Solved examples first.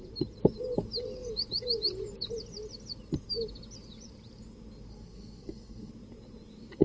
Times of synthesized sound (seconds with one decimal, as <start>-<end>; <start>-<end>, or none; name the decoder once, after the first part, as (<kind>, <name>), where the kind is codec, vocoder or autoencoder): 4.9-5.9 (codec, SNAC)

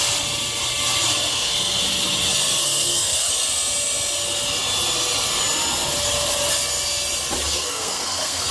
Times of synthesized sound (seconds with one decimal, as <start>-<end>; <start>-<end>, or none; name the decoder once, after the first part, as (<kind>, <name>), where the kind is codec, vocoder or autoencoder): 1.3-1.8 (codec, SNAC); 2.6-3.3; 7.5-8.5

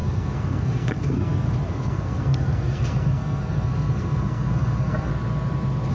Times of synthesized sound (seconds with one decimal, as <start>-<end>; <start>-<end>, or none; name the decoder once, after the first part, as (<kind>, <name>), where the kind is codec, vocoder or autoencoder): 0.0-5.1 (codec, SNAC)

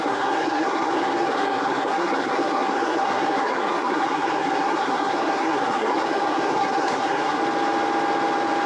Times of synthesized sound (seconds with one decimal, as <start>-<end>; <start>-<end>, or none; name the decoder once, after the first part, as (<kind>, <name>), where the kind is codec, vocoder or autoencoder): 0.0-7.4 (codec, SNAC)

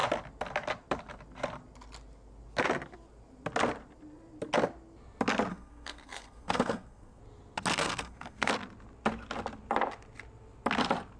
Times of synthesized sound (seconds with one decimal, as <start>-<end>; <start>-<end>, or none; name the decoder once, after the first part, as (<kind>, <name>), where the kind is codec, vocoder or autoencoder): 5.5-7.2 (codec, SNAC); 7.7-8.5